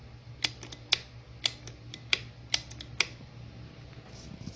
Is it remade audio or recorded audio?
recorded